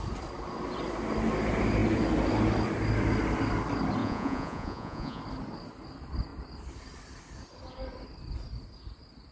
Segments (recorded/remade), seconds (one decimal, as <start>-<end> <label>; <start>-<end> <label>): 0.0-4.0 recorded; 4.0-5.2 remade; 5.2-9.3 recorded